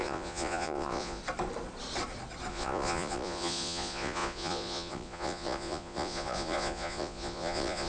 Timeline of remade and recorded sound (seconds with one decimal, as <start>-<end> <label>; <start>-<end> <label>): 0.0-1.2 remade; 1.2-2.5 recorded; 2.5-7.9 remade